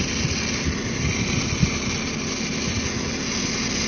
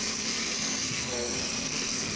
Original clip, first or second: first